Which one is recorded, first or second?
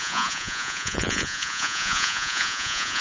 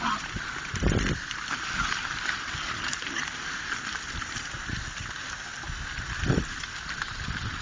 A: second